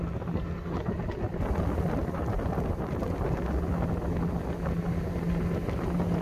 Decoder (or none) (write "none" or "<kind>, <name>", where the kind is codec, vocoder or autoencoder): none